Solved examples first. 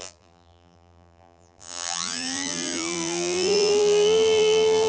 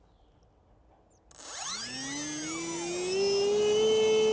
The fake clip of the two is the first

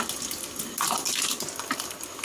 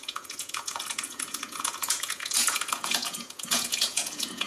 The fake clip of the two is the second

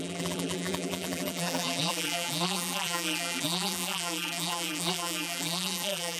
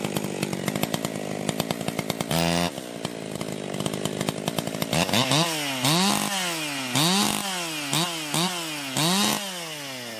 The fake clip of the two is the first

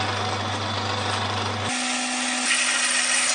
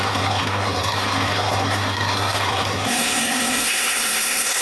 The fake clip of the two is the second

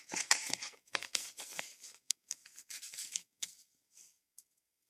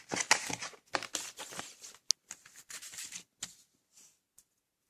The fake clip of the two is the first